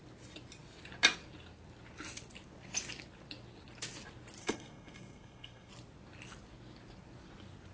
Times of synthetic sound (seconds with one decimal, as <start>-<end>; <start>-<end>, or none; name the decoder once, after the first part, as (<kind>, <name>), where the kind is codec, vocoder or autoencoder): 4.4-5.7 (codec, SNAC)